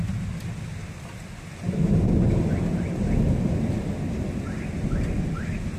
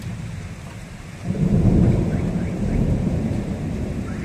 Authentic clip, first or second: first